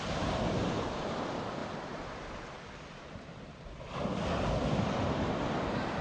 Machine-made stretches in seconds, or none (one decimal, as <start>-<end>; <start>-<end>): 0.0-1.6; 4.0-6.0